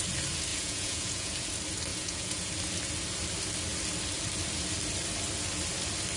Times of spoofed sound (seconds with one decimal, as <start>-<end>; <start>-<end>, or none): 0.5-1.3; 1.9-2.5